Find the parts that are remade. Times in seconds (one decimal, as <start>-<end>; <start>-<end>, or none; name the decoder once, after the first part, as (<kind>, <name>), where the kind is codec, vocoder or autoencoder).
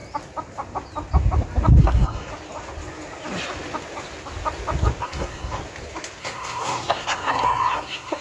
1.8-2.3 (codec, SNAC); 5.0-5.6; 6.2-8.2